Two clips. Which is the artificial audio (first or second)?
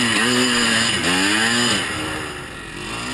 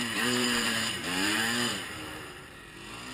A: second